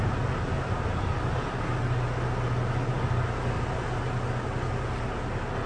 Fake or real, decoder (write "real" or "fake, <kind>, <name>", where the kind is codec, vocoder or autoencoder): real